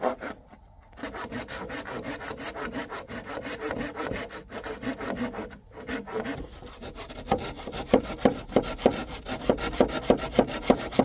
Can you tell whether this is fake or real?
real